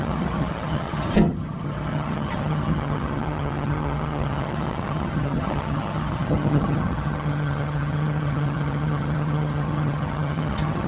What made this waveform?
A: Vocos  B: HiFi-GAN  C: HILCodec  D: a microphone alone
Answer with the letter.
B